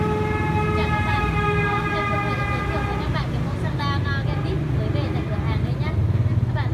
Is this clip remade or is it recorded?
recorded